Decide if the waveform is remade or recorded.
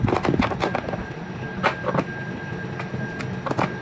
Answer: recorded